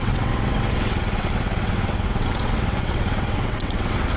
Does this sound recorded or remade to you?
remade